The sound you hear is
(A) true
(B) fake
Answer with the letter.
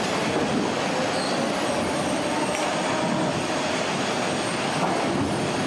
A